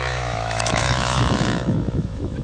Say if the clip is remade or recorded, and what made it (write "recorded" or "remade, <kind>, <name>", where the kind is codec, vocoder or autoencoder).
remade, autoencoder, DAC-VAE